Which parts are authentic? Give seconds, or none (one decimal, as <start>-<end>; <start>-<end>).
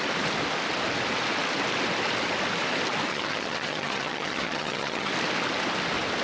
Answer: 0.0-3.1; 5.1-6.2